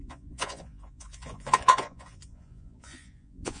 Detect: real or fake fake